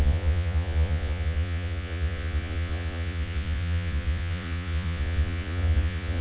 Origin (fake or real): fake